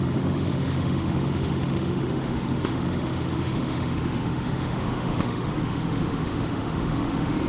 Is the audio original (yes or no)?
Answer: no